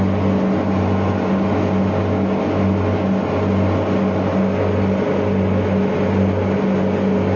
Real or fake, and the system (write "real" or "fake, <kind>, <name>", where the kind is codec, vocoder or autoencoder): real